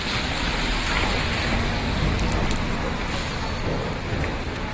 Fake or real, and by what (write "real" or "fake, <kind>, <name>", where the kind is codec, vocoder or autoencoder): real